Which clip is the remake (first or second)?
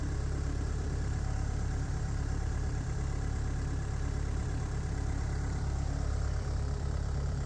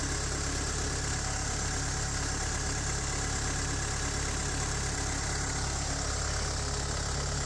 first